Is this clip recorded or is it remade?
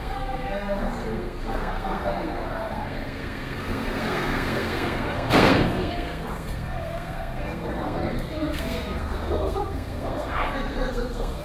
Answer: remade